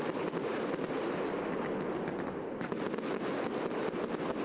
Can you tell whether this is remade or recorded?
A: recorded